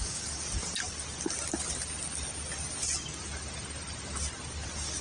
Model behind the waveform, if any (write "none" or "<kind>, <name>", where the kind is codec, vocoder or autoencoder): none